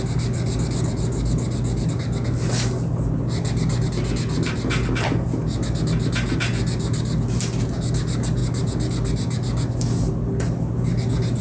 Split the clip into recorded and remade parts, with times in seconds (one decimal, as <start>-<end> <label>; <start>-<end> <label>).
0.0-11.4 recorded